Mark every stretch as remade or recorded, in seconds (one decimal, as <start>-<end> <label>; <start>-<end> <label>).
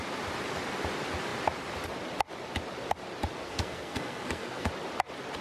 0.0-3.4 recorded; 3.4-4.7 remade; 4.7-5.4 recorded